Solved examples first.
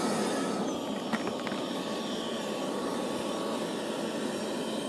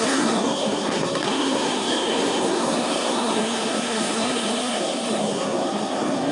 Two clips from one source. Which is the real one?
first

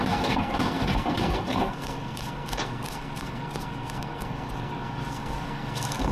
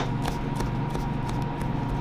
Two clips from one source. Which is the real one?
second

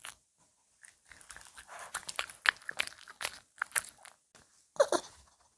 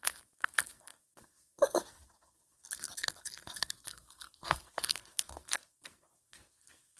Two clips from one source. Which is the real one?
first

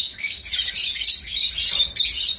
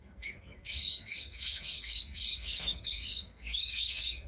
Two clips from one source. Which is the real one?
first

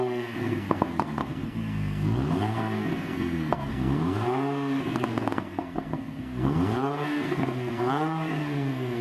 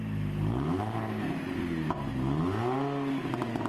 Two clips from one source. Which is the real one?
second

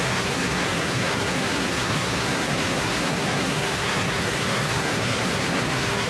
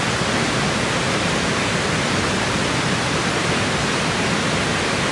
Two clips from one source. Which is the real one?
second